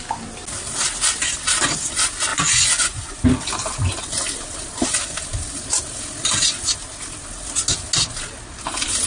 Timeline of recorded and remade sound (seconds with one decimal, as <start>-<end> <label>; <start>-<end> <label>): 0.0-2.3 recorded; 2.3-3.2 remade; 3.2-9.1 recorded

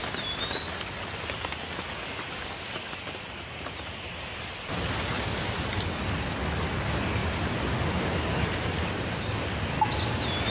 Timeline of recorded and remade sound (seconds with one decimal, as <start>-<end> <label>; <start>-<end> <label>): 0.0-10.5 recorded

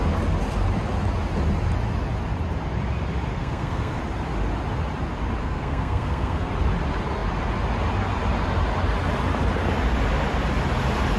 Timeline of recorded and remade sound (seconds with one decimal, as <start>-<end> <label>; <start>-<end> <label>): 0.0-3.3 recorded; 3.3-4.0 remade; 4.0-5.4 recorded; 5.4-6.5 remade; 6.5-11.2 recorded

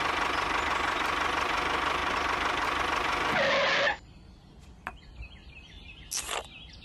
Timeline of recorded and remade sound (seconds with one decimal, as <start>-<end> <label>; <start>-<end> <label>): 0.0-6.8 recorded

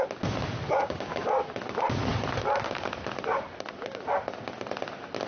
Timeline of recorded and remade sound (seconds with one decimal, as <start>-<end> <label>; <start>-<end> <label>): 0.0-0.8 recorded; 0.8-1.3 remade; 1.3-5.3 recorded

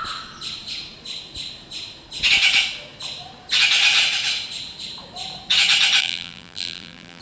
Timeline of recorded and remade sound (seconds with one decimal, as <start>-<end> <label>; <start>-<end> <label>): 0.0-6.0 recorded; 6.0-7.2 remade

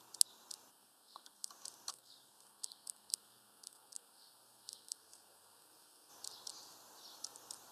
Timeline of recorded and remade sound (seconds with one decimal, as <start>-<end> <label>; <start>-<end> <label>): 0.0-0.7 recorded; 0.7-1.5 remade; 1.5-1.9 recorded; 1.9-6.1 remade; 6.1-7.7 recorded